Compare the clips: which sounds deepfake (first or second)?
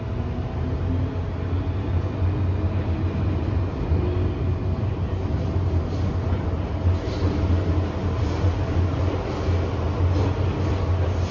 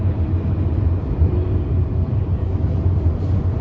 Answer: second